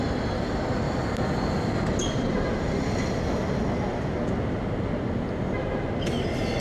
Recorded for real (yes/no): yes